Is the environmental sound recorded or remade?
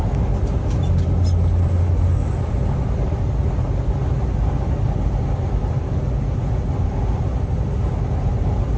recorded